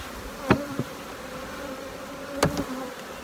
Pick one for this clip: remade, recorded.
recorded